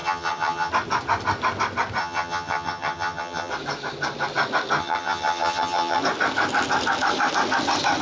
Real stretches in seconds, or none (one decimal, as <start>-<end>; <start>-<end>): 0.7-2.0; 3.5-4.8; 6.0-8.0